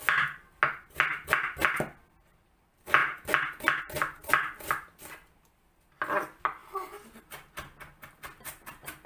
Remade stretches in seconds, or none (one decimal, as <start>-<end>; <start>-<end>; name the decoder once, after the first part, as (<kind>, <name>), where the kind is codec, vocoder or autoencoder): none